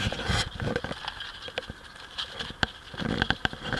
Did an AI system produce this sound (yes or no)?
no